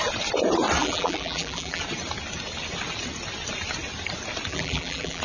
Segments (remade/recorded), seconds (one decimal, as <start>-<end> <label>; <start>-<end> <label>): 0.0-0.8 recorded; 0.8-1.8 remade; 1.8-4.5 recorded; 4.5-5.2 remade